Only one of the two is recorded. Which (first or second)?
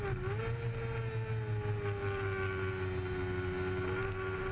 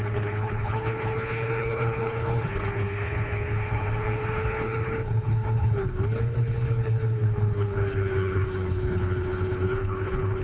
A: first